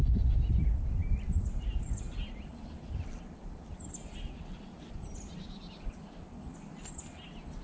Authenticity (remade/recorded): recorded